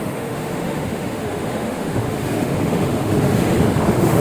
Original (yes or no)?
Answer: no